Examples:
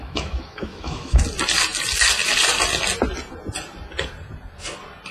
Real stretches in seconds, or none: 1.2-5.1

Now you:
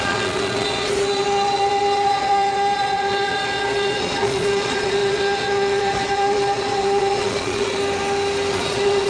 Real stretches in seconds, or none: 7.8-8.5

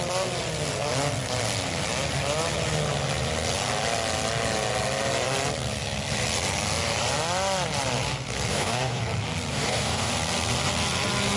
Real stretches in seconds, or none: 0.0-8.5; 9.0-9.5; 10.1-11.4